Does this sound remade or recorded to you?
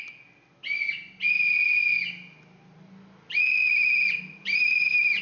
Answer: recorded